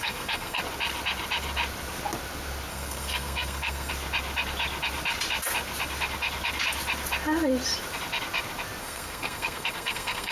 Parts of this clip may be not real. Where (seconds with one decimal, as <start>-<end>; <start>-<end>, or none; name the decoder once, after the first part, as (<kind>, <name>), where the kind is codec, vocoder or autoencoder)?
0.0-0.6 (codec, SNAC); 2.7-3.9; 8.8-10.3